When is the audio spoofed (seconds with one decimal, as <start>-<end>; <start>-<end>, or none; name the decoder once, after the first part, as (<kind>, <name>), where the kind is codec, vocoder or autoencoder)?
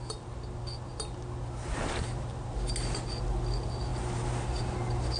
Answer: none